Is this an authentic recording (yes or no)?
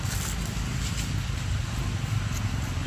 yes